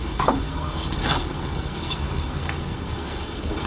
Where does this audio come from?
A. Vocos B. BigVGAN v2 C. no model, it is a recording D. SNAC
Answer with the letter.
D